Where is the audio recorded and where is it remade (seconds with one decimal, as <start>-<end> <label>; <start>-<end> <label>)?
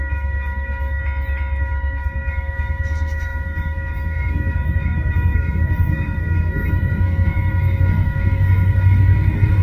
0.0-1.0 remade; 1.0-1.6 recorded; 1.6-9.6 remade